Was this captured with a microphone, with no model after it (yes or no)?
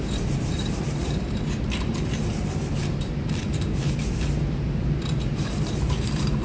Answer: no